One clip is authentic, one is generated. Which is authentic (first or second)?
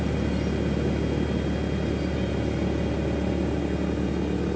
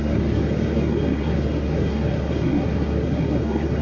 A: first